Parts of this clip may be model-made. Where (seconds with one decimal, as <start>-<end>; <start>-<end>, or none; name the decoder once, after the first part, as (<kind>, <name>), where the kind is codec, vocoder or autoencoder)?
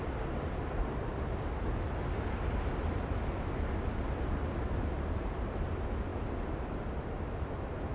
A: none